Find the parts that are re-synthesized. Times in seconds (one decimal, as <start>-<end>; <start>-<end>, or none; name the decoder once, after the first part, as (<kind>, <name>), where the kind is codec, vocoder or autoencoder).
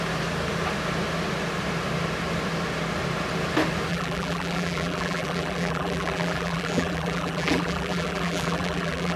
3.9-9.2 (vocoder, BigVGAN v2)